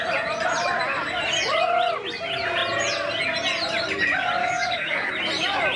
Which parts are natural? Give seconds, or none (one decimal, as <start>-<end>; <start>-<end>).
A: 0.0-4.4; 5.1-5.8